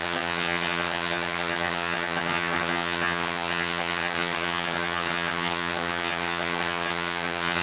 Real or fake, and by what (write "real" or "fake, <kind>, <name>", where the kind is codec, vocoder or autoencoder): fake, vocoder, HiFi-GAN